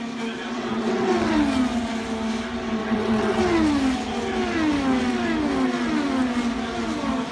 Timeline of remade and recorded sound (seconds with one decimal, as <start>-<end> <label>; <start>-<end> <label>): 0.0-0.4 recorded; 0.4-1.3 remade; 1.3-2.8 recorded; 2.8-3.4 remade; 3.4-7.3 recorded